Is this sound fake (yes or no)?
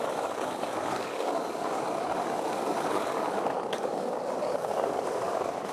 yes